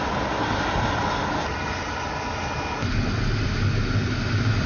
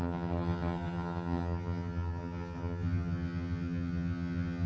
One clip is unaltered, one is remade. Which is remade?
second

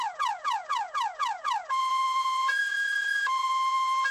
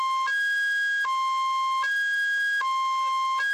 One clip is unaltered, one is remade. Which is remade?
first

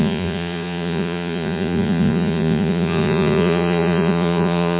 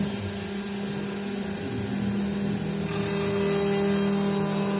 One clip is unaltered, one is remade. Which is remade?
first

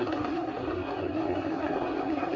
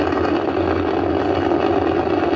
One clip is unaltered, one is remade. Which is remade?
first